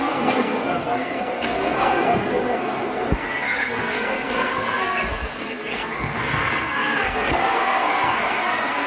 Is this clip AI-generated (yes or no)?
yes